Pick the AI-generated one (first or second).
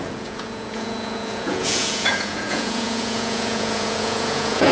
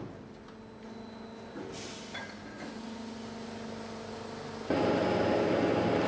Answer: first